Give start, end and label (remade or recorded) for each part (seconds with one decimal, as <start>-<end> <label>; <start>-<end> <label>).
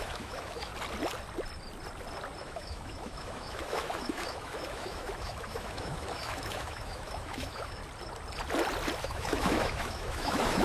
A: 0.0-0.7 remade; 0.7-2.4 recorded; 2.4-7.8 remade; 7.8-9.0 recorded; 9.0-10.6 remade